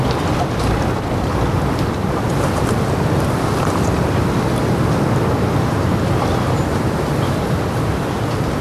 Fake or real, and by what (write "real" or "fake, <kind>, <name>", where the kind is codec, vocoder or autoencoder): real